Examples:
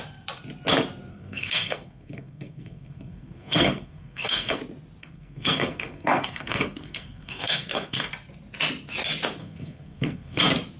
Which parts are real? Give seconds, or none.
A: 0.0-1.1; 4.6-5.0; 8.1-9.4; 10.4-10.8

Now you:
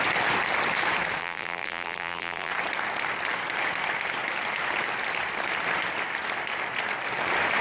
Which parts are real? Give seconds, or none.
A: 0.0-1.2; 2.5-7.6

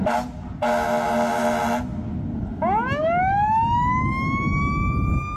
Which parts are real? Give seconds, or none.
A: 0.0-5.4

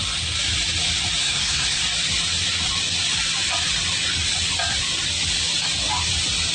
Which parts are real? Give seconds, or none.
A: 0.0-1.2; 1.8-6.5

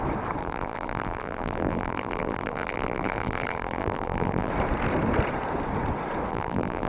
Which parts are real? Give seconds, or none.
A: 0.0-0.4; 4.5-6.3

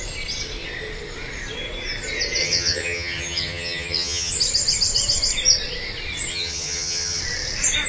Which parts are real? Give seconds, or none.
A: 0.0-2.4; 4.3-6.3; 7.2-7.9

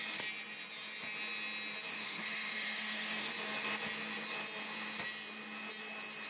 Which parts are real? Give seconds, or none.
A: 0.0-1.9; 3.3-6.3